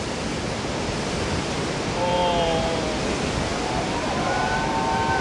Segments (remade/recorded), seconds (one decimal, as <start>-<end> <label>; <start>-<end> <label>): 0.0-5.2 recorded